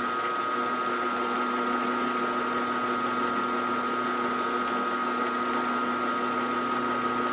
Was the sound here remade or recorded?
recorded